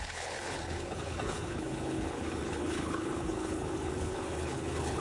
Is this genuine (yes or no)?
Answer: no